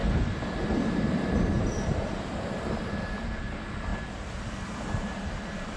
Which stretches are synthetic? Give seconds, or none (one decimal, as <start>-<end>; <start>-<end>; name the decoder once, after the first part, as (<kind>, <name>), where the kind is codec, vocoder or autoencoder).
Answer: 0.0-5.8 (vocoder, BigVGAN v2)